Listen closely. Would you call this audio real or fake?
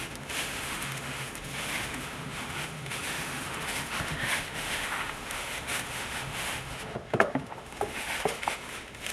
fake